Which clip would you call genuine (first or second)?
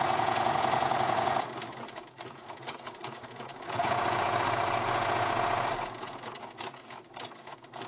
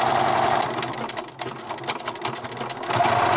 second